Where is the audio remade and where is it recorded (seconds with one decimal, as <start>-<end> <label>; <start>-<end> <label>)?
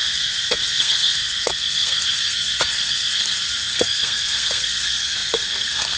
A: 0.0-6.0 remade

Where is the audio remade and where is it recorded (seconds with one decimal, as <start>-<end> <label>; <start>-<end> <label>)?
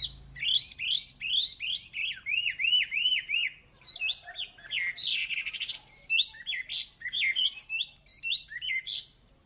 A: 0.0-9.5 recorded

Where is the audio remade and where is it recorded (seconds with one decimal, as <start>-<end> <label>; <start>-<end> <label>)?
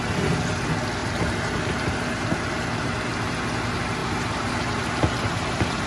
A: 0.0-1.0 recorded; 1.0-2.9 remade; 2.9-4.0 recorded; 4.0-5.9 remade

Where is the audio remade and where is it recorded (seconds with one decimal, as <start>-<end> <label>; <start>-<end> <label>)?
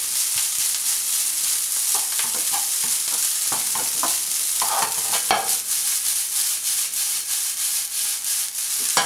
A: 0.0-9.1 recorded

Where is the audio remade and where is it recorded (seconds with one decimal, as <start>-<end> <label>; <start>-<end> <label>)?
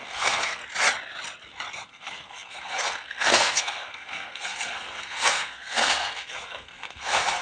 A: 0.0-0.6 remade; 0.6-1.9 recorded; 1.9-7.4 remade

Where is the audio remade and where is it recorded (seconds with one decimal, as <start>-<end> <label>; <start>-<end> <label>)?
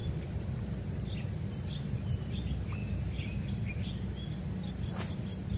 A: 0.0-1.3 recorded; 1.3-2.8 remade; 2.8-3.7 recorded; 3.7-5.6 remade